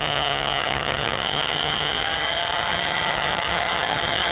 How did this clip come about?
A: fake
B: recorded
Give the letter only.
A